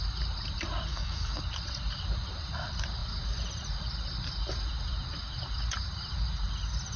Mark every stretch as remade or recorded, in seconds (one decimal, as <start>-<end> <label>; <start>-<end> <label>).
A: 0.0-0.9 recorded; 0.9-1.4 remade; 1.4-7.0 recorded